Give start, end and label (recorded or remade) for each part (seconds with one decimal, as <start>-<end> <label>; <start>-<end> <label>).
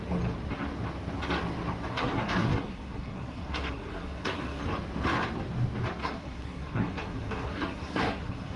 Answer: 0.0-1.9 recorded; 1.9-4.6 remade; 4.6-6.0 recorded; 6.0-8.6 remade